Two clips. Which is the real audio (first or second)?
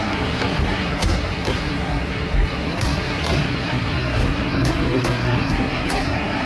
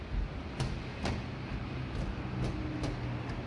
second